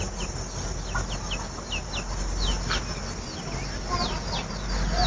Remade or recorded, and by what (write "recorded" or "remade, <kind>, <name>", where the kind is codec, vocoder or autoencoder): recorded